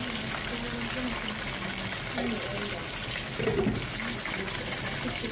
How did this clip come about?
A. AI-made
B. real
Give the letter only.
B